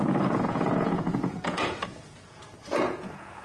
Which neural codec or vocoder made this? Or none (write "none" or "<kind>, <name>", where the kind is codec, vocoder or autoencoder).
vocoder, Vocos